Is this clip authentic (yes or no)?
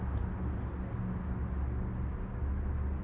yes